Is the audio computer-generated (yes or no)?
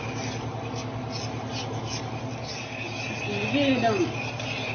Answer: no